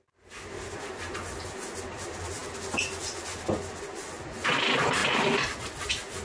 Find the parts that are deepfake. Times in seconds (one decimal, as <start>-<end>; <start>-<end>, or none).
none